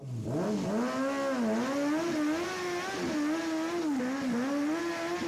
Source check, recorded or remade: recorded